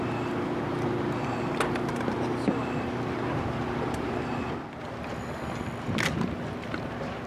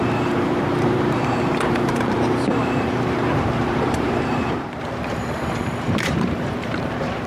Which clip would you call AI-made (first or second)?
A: second